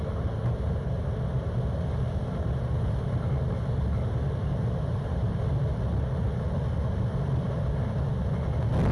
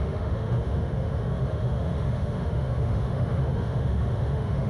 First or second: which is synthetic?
second